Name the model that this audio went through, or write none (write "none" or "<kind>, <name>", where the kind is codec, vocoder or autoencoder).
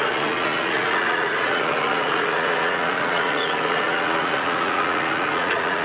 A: vocoder, Vocos